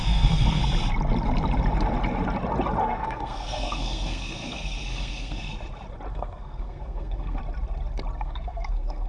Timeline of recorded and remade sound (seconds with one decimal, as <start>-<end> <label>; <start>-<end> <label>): 0.0-0.6 remade; 0.6-2.8 recorded; 2.8-5.5 remade; 5.5-6.1 recorded; 6.1-7.4 remade; 7.4-8.2 recorded; 8.2-9.1 remade